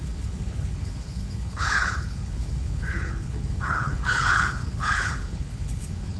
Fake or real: fake